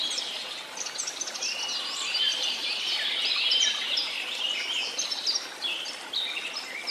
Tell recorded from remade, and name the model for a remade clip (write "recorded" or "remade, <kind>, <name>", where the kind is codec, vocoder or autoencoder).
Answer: recorded